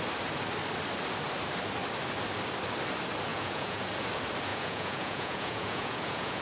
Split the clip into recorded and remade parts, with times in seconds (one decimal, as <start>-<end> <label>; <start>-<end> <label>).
0.0-3.3 recorded; 3.3-3.9 remade; 3.9-4.5 recorded; 4.5-6.4 remade